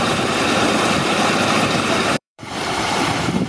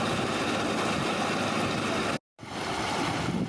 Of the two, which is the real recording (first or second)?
second